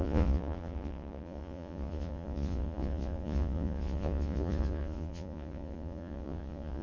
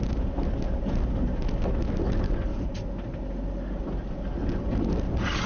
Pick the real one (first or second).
second